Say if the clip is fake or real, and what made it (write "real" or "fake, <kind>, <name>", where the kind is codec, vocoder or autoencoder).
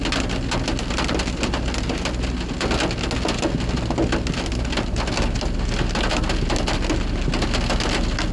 real